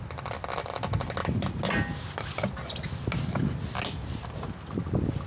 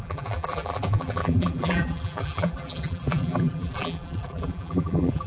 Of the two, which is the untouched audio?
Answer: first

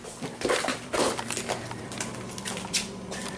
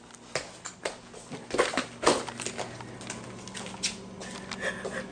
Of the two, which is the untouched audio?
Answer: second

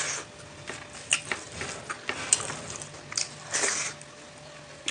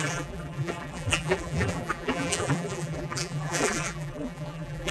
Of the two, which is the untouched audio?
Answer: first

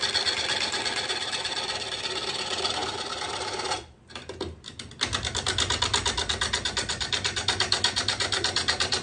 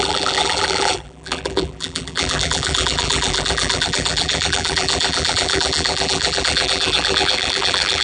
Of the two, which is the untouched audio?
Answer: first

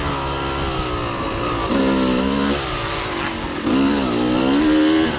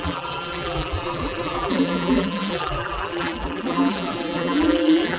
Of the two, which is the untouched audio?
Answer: first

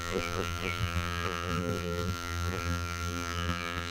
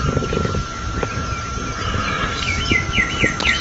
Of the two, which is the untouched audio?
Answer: second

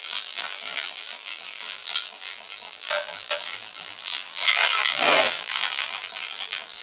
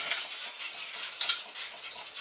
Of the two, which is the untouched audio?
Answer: second